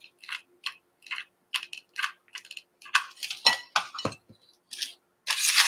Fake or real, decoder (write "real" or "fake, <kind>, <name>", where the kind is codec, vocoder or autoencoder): real